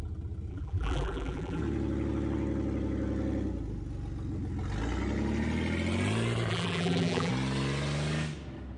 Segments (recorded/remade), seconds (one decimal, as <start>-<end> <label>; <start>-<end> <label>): 0.0-0.5 recorded; 0.5-1.6 remade; 1.6-6.5 recorded; 6.5-7.3 remade; 7.3-8.8 recorded